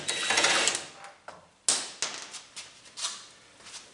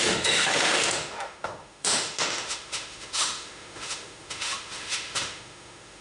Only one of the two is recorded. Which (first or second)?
first